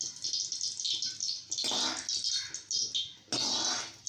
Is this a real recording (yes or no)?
yes